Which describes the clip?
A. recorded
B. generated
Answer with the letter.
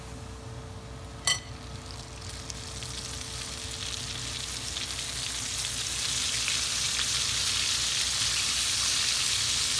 A